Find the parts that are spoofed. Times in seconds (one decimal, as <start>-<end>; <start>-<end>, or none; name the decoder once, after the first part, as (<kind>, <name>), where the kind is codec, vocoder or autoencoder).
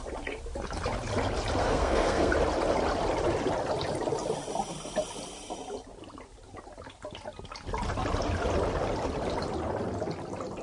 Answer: 1.6-2.3 (codec, SNAC)